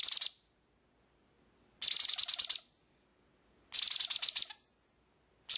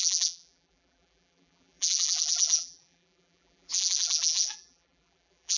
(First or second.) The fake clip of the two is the second